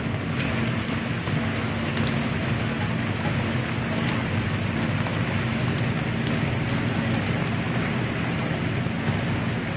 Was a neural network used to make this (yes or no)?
no